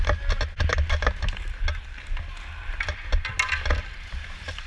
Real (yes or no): yes